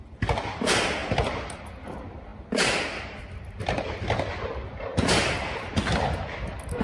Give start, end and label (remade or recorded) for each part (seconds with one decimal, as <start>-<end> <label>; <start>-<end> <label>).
0.0-6.8 recorded